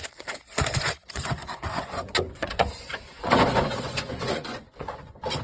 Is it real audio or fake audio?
fake